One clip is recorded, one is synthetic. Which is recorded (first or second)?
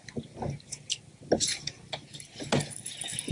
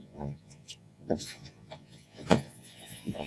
first